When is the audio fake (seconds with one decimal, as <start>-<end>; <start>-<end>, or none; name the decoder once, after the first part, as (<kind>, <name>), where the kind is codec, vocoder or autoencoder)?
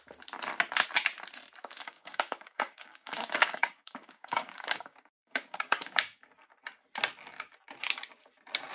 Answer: 1.6-6.2 (codec, DAC)